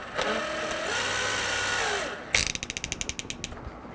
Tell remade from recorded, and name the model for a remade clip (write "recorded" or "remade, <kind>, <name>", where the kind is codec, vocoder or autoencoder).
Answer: recorded